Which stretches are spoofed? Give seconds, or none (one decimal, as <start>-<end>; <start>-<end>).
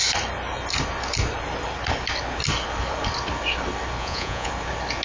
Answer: 4.0-4.5